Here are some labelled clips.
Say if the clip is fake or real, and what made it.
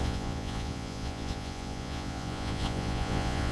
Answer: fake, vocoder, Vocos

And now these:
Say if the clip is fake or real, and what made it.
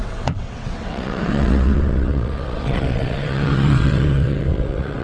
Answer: fake, vocoder, WaveNeXt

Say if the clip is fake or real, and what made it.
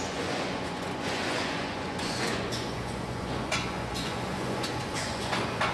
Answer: fake, vocoder, Vocos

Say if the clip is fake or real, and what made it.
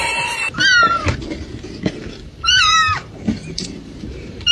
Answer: fake, vocoder, BigVGAN v2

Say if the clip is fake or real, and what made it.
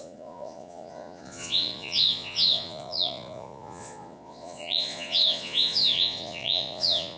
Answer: fake, vocoder, Vocos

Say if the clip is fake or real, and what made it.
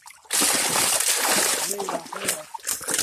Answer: real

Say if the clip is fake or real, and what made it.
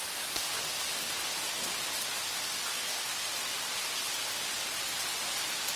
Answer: real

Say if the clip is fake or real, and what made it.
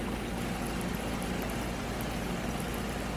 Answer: real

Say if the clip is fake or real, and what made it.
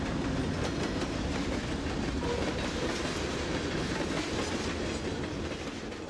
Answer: real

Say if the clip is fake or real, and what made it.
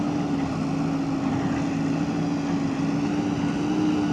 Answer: real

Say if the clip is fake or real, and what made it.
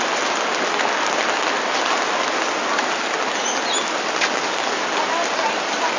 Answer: real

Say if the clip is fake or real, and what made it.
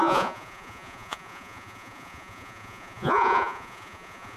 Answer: fake, vocoder, Vocos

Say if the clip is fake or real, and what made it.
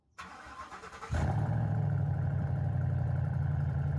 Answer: fake, vocoder, BigVGAN v2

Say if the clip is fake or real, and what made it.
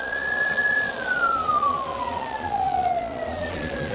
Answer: fake, vocoder, Vocos